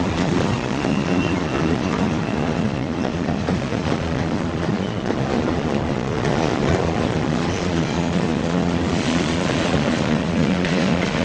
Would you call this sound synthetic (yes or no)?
yes